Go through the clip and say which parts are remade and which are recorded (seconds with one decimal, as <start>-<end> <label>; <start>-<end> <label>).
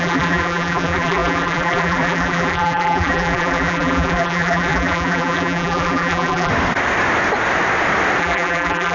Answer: 0.0-6.5 remade; 6.5-8.2 recorded; 8.2-8.9 remade